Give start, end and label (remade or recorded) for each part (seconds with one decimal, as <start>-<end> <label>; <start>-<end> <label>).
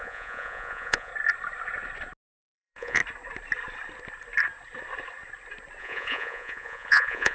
0.0-1.1 remade; 1.1-2.4 recorded; 2.4-3.0 remade; 3.0-5.8 recorded; 5.8-7.3 remade